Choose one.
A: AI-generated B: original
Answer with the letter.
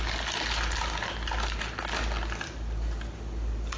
B